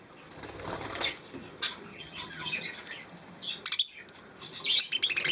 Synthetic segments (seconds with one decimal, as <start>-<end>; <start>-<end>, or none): 1.9-2.5